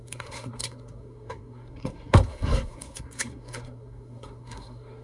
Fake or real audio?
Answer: fake